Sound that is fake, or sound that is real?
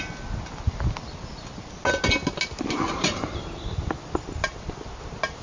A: real